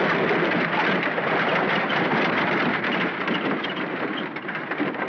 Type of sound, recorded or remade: recorded